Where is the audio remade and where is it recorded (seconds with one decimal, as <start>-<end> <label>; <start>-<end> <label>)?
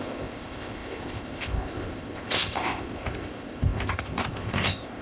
0.0-5.0 remade